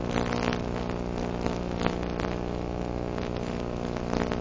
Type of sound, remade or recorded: recorded